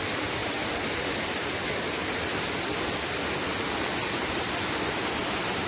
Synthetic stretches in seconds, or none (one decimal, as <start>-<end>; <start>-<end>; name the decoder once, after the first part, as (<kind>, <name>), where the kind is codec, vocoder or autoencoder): none

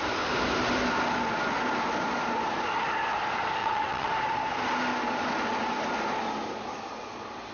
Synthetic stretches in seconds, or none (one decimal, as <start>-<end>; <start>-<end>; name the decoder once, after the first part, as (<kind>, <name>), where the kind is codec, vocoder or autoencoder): 3.6-4.1 (vocoder, WaveNeXt)

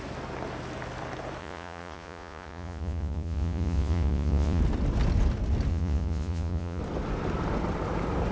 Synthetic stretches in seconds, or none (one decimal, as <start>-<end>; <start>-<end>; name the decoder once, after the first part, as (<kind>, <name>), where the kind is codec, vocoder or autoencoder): 1.4-4.6 (vocoder, Vocos); 5.7-6.8

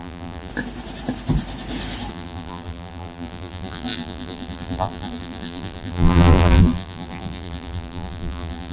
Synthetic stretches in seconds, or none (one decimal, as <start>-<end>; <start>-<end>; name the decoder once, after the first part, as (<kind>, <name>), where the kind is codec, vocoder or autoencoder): 0.0-0.5 (vocoder, BigVGAN v2); 2.1-8.7

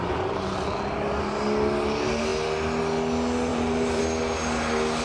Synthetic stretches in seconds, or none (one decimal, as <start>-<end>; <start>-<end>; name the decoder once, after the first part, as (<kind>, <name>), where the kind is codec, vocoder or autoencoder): 3.5-4.0 (vocoder, BigVGAN v2)

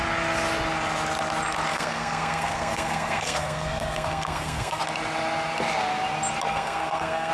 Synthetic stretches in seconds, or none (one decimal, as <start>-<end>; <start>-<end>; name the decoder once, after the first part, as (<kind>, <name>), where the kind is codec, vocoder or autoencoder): 1.7-4.8 (codec, SNAC); 6.5-7.3

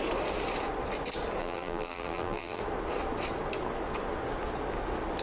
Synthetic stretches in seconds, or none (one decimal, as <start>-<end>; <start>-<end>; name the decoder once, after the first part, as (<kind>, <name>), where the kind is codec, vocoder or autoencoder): 1.4-2.6 (vocoder, BigVGAN v2)

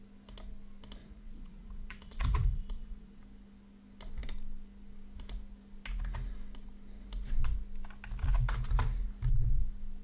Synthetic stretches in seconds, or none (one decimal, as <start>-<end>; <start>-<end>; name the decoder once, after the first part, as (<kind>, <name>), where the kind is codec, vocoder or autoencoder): 1.0-3.2 (vocoder, Vocos)